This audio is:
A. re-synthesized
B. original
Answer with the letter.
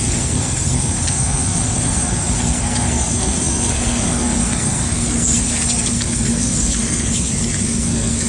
A